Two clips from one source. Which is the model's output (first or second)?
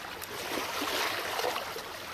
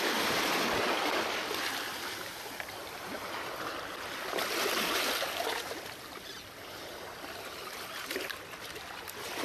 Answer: first